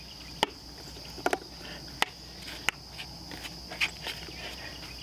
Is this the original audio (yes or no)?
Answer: yes